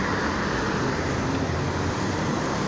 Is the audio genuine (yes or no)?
yes